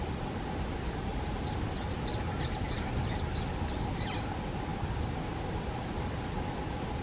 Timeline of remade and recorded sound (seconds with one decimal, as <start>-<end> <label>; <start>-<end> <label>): 0.0-1.1 recorded; 1.1-2.8 remade; 2.8-7.0 recorded